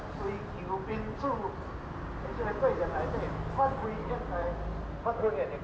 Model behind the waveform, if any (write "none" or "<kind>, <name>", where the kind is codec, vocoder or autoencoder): none